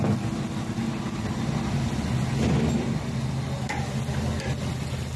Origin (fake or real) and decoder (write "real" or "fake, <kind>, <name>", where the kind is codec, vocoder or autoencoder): real